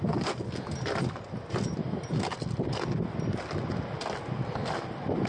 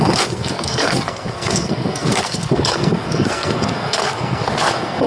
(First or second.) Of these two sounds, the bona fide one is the first